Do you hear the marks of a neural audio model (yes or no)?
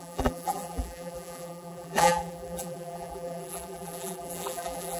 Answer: yes